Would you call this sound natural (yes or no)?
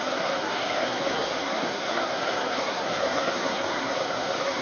no